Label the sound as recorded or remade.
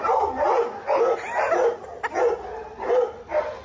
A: recorded